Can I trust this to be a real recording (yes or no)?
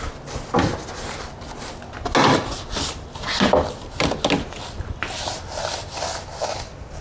yes